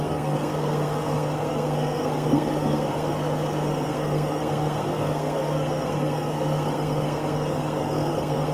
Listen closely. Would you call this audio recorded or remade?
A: remade